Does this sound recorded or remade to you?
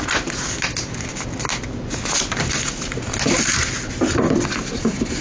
recorded